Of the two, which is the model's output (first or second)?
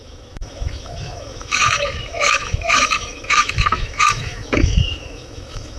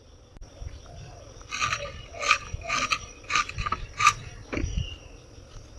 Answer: first